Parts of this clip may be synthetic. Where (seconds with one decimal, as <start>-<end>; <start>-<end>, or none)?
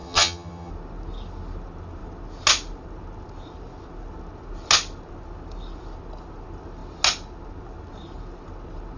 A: 0.0-0.7